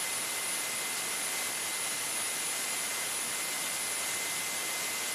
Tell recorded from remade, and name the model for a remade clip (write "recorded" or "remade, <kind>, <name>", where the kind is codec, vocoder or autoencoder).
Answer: recorded